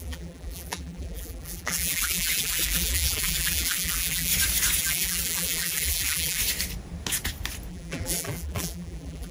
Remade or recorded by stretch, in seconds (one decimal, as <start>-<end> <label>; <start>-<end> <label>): 0.0-4.3 remade; 4.3-4.8 recorded; 4.8-6.4 remade; 6.4-7.7 recorded; 7.7-9.3 remade